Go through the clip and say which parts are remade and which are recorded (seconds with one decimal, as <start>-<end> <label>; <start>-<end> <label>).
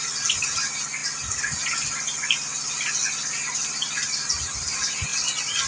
0.0-5.7 recorded